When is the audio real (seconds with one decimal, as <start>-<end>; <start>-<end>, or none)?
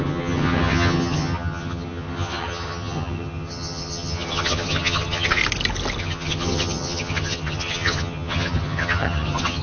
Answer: 5.4-6.0